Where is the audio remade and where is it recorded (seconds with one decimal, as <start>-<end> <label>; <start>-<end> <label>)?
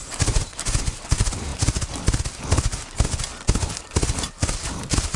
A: 0.0-0.8 remade; 0.8-5.2 recorded